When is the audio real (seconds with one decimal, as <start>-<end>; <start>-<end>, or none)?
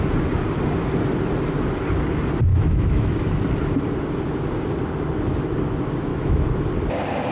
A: 0.0-2.5; 3.4-6.1; 6.7-7.3